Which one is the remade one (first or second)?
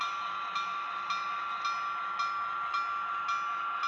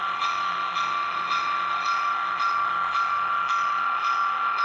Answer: second